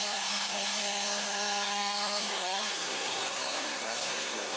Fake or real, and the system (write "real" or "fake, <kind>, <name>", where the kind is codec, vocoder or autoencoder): fake, codec, SNAC